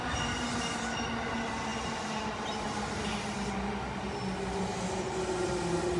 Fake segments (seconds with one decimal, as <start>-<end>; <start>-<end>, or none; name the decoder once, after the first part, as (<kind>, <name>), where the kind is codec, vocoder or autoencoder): none